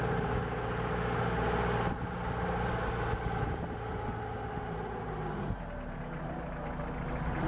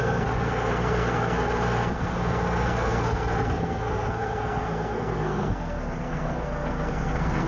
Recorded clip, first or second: first